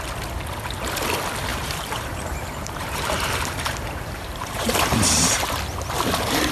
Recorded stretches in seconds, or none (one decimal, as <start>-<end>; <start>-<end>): 0.0-1.5; 5.4-6.5